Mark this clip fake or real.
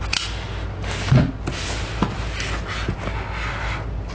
real